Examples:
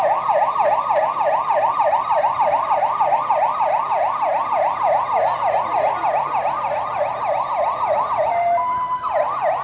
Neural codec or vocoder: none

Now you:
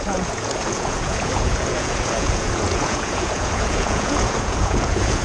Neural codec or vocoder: vocoder, Vocos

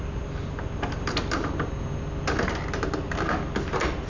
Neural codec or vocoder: none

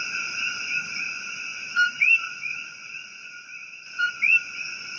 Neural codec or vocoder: vocoder, Vocos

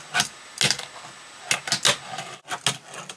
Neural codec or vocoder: none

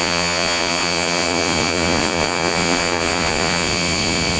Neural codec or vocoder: vocoder, Vocos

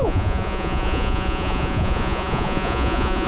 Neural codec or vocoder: vocoder, Vocos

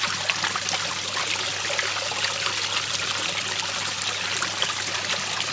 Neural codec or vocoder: none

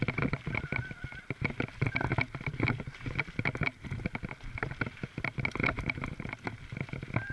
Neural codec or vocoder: none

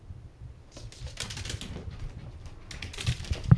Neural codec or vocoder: none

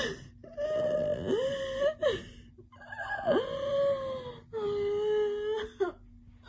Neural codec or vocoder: none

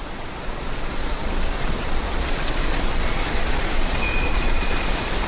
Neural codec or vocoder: vocoder, Vocos